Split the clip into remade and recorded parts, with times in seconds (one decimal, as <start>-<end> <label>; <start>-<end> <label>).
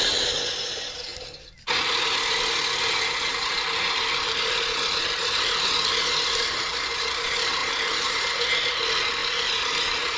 0.0-10.2 recorded